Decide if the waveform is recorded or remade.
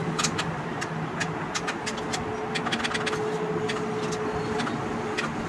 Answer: recorded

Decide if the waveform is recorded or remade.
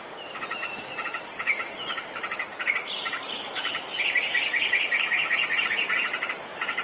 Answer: remade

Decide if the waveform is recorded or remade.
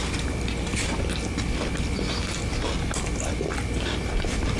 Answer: recorded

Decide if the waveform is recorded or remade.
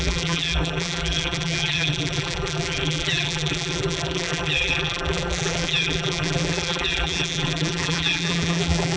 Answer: remade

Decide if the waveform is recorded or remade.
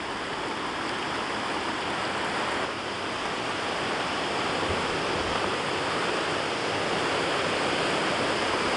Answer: recorded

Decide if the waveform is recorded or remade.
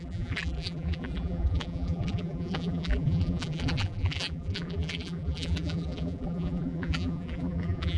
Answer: remade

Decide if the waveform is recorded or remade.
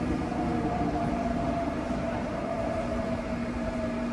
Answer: remade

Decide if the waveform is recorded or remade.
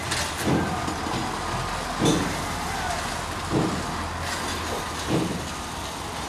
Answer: recorded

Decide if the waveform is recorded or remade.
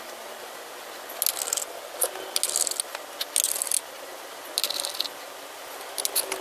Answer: recorded